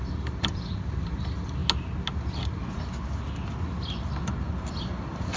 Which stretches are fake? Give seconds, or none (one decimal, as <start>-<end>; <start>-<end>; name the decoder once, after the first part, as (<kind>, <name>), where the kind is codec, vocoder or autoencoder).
0.0-1.6 (vocoder, BigVGAN v2); 4.8-5.4